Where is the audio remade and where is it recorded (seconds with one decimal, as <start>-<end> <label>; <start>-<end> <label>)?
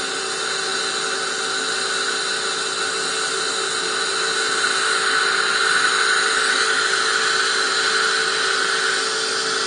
0.0-9.7 recorded